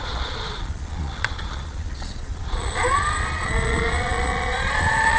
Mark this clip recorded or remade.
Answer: remade